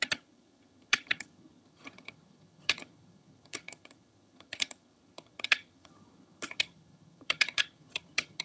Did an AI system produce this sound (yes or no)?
yes